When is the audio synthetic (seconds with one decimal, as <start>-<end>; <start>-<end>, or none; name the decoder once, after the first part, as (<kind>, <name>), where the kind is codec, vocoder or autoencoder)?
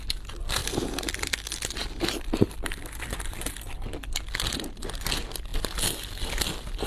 none